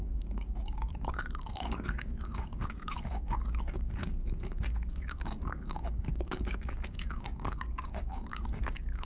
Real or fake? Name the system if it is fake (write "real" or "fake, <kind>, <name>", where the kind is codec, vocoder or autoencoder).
fake, codec, DAC